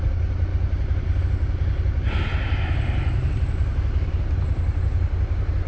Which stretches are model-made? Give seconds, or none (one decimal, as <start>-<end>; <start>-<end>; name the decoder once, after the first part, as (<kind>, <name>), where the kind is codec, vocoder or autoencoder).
none